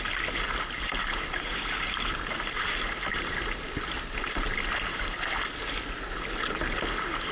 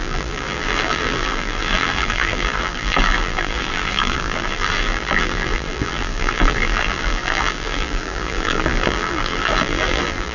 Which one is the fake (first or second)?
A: second